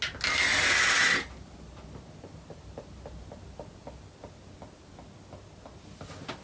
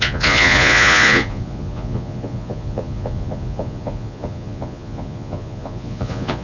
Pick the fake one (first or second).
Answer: second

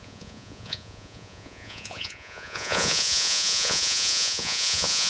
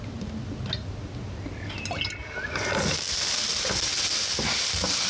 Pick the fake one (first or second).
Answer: first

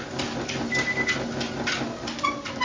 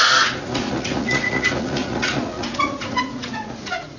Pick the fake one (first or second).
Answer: second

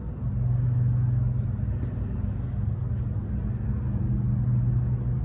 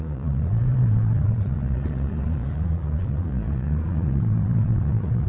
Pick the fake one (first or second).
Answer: second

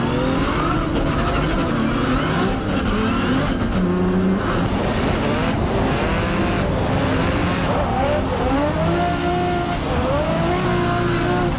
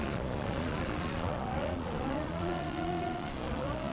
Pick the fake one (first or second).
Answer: second